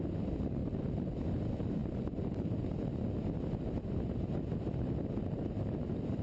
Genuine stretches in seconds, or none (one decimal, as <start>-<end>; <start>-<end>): 0.0-6.2